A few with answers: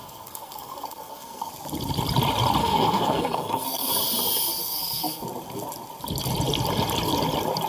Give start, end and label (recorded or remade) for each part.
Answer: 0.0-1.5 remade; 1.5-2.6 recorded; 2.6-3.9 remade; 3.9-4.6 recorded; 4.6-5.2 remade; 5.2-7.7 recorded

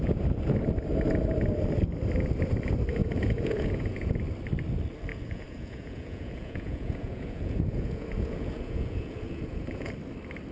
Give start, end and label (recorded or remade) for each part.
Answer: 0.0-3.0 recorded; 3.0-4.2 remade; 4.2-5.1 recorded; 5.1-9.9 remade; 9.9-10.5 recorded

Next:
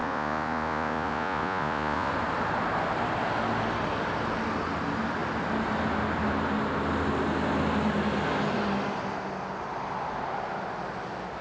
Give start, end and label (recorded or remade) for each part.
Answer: 0.0-2.1 remade; 2.1-11.4 recorded

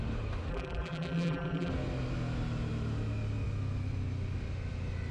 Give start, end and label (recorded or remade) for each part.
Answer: 0.0-0.5 recorded; 0.5-1.7 remade; 1.7-5.1 recorded